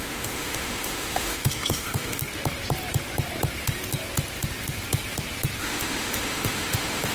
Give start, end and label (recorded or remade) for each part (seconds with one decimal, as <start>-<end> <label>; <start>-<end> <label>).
0.0-2.2 remade; 2.2-5.6 recorded; 5.6-7.1 remade